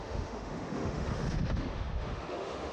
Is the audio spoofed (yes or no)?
yes